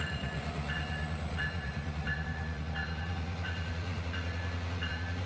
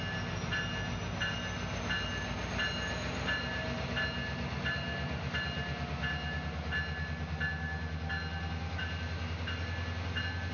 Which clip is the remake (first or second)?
first